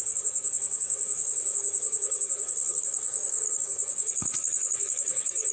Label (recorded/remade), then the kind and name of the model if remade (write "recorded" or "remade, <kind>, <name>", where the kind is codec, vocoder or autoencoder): remade, codec, DAC